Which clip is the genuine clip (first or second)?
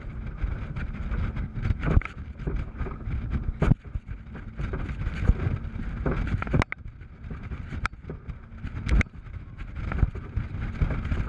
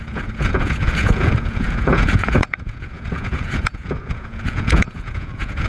first